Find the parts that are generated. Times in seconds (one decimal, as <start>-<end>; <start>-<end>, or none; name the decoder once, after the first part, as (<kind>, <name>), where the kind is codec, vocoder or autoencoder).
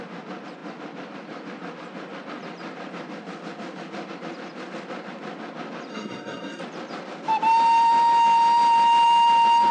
5.9-6.6 (codec, SNAC)